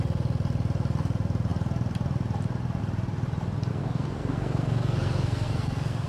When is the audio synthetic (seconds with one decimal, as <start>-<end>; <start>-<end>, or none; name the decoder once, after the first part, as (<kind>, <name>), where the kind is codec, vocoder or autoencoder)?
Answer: 3.7-6.1 (codec, SNAC)